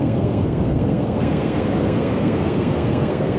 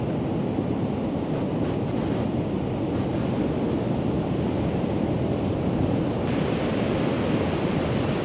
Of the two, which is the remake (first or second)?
first